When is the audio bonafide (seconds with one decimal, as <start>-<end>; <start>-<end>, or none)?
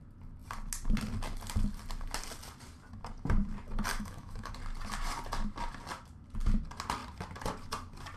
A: 0.0-3.9; 4.5-8.2